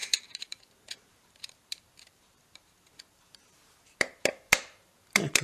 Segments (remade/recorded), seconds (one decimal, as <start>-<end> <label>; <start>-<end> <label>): 0.0-5.4 remade